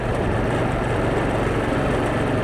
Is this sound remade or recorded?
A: recorded